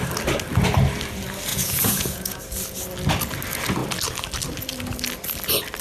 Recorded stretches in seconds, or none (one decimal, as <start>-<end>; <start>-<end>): 0.0-1.5; 2.4-5.8